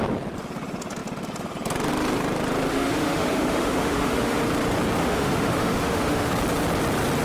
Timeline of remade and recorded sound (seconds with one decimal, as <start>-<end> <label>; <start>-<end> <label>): 0.0-2.7 recorded; 2.7-4.4 remade; 4.4-5.0 recorded; 5.0-6.3 remade; 6.3-7.2 recorded